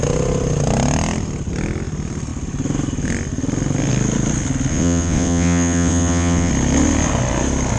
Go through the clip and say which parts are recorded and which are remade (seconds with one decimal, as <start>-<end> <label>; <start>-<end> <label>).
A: 0.0-4.7 recorded; 4.7-6.5 remade; 6.5-7.8 recorded